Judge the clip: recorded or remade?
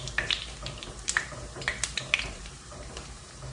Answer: remade